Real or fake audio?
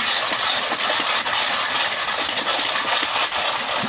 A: real